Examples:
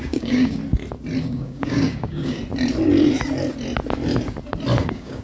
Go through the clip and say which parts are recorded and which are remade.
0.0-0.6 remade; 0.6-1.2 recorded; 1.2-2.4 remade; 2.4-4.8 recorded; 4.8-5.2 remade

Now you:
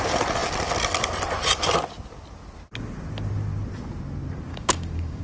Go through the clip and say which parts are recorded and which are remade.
0.0-4.5 recorded; 4.5-5.2 remade

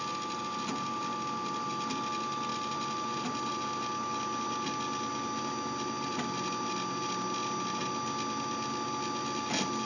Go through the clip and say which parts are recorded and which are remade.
0.0-9.9 recorded

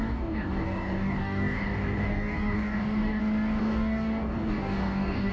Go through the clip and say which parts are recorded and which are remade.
0.0-3.2 remade; 3.2-3.6 recorded; 3.6-5.3 remade

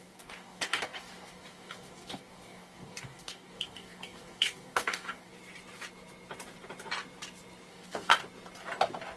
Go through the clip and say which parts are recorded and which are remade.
0.0-5.3 remade; 5.3-7.7 recorded; 7.7-8.1 remade; 8.1-9.2 recorded

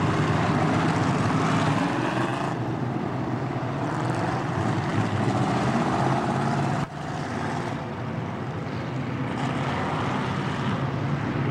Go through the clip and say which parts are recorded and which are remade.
0.0-11.5 recorded

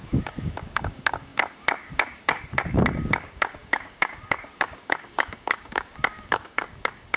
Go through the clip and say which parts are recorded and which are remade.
0.0-7.2 remade